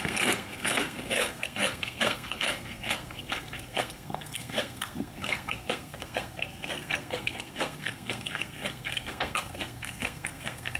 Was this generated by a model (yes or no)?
yes